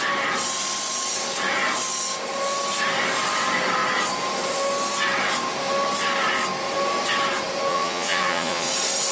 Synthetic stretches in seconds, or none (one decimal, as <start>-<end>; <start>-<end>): 7.7-8.7